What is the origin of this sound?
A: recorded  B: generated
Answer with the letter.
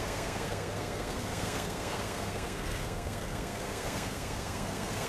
B